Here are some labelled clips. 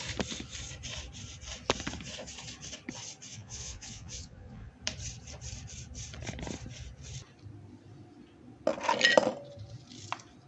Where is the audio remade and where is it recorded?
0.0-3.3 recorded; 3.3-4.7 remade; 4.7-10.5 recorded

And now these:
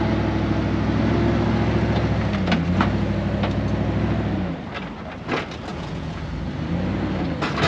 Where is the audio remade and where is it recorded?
0.0-5.7 recorded; 5.7-6.2 remade; 6.2-7.7 recorded

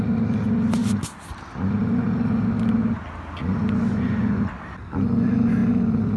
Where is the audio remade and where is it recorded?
0.0-3.9 recorded; 3.9-4.4 remade; 4.4-6.2 recorded

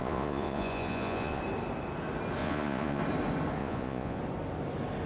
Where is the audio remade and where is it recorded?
0.0-1.4 remade; 1.4-2.4 recorded; 2.4-3.0 remade; 3.0-3.6 recorded; 3.6-4.2 remade; 4.2-5.1 recorded

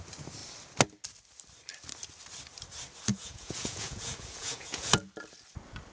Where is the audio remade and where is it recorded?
0.0-3.1 recorded; 3.1-4.9 remade; 4.9-5.9 recorded

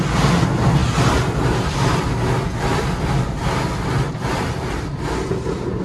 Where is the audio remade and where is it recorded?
0.0-5.8 recorded

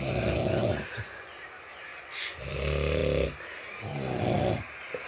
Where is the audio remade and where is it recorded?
0.0-0.7 recorded; 0.7-1.3 remade; 1.3-1.9 recorded; 1.9-2.4 remade; 2.4-5.1 recorded